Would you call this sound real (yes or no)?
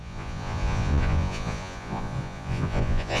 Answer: no